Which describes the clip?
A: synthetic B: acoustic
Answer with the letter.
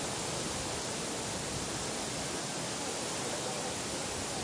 B